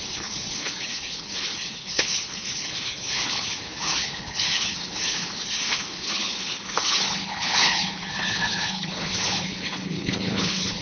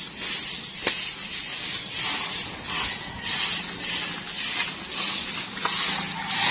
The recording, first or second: second